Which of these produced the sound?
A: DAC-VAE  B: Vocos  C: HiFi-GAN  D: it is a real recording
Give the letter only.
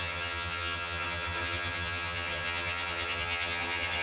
C